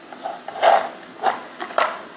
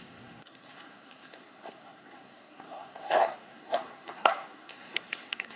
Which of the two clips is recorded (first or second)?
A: first